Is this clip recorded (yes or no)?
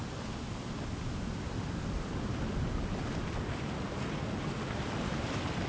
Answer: yes